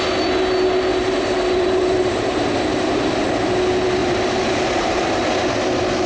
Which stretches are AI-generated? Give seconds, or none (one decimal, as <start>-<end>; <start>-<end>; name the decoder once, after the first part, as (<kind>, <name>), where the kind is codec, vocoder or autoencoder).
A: 1.0-3.1 (vocoder, BigVGAN v2); 4.0-5.0